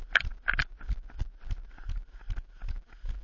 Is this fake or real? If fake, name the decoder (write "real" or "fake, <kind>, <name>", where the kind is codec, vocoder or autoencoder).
real